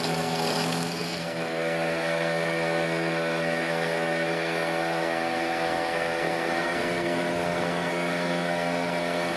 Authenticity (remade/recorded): remade